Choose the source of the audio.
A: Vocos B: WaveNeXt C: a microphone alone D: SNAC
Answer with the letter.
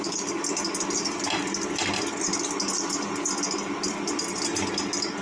C